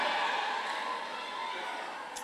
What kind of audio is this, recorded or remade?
recorded